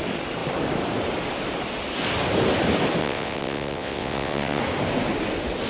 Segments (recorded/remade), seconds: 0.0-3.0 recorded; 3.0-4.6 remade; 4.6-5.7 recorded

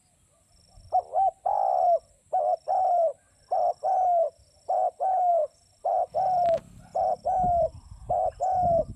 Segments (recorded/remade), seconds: 0.0-9.0 recorded

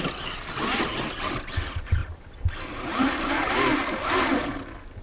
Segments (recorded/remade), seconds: 0.0-5.0 recorded

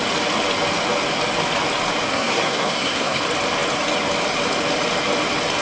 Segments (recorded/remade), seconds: 0.0-2.1 recorded; 2.1-3.2 remade; 3.2-5.6 recorded

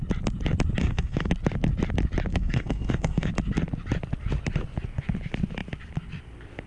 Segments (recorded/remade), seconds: 0.0-0.8 recorded; 0.8-1.3 remade; 1.3-2.3 recorded; 2.3-3.3 remade; 3.3-6.7 recorded

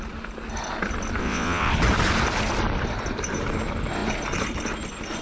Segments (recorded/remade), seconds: 0.0-1.2 recorded; 1.2-1.7 remade; 1.7-5.2 recorded